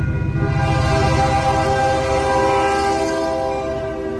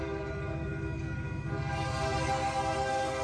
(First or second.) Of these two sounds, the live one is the first